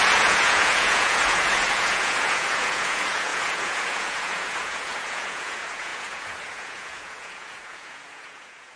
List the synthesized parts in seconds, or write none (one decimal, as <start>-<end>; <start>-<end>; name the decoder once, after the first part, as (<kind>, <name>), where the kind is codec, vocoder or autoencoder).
0.0-8.8 (vocoder, Vocos)